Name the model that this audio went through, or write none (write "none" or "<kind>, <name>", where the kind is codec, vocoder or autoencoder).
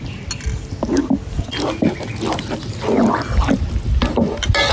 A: none